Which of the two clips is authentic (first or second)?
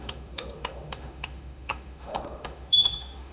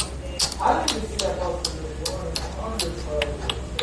second